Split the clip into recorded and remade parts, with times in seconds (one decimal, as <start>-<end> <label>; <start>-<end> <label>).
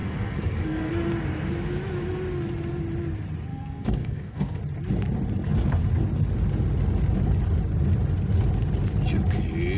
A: 0.0-0.9 remade; 0.9-3.5 recorded; 3.5-4.6 remade; 4.6-9.8 recorded